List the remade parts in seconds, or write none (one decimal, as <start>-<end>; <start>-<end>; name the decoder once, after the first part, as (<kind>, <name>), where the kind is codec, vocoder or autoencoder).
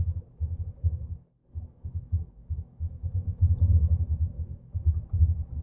1.4-4.8 (autoencoder, DAC-VAE)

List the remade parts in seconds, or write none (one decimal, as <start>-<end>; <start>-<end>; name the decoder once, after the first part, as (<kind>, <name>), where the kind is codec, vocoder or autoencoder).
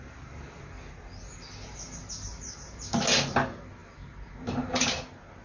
none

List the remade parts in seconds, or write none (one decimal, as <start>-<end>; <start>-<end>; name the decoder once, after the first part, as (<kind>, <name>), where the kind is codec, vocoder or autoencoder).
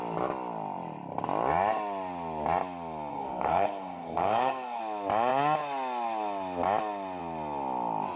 3.1-4.8 (codec, SNAC)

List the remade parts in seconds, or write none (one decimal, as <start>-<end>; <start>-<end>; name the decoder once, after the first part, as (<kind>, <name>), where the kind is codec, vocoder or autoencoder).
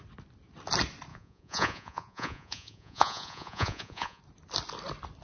1.1-4.2 (vocoder, Vocos)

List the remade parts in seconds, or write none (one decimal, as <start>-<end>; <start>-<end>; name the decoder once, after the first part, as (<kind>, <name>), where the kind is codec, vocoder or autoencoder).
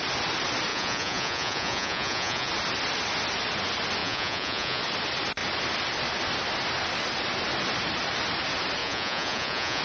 0.7-2.5 (vocoder, Vocos); 4.0-4.8; 8.8-9.8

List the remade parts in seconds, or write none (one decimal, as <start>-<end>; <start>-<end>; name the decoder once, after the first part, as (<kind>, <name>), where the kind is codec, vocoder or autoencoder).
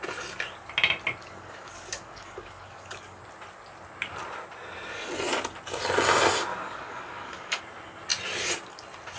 1.2-3.2 (codec, DAC); 6.5-7.6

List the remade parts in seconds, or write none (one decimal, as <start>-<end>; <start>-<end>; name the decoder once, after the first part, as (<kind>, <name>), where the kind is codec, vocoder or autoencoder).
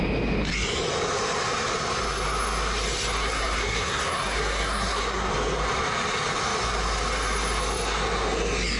3.2-5.3 (codec, SNAC)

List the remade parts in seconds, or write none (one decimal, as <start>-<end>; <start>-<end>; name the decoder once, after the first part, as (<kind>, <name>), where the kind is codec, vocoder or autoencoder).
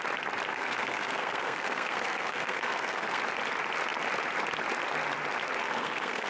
0.5-3.2 (codec, SNAC); 5.6-6.3